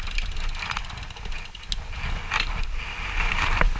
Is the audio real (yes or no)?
yes